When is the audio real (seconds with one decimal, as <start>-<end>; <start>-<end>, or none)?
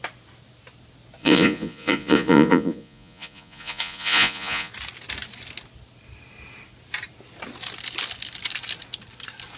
0.0-1.2; 4.7-9.6